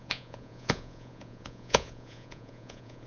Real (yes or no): no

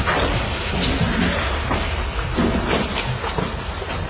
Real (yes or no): yes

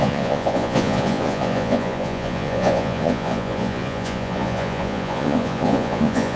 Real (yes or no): no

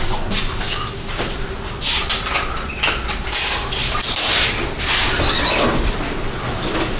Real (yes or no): yes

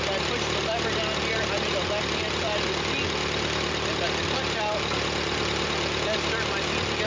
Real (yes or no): yes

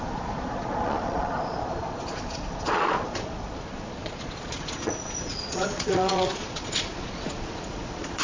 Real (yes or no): no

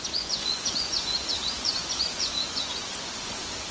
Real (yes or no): no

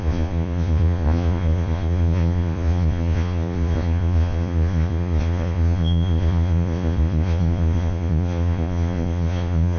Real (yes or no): no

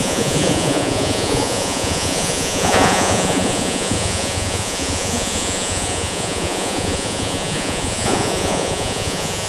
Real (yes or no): no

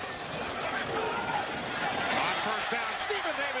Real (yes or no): yes